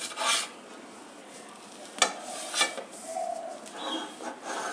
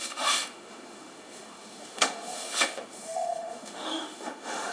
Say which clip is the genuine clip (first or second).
first